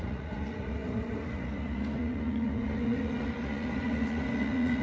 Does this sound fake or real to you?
fake